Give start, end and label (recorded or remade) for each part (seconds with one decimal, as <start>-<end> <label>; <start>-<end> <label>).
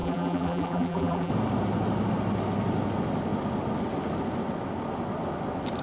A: 0.0-1.3 remade; 1.3-5.8 recorded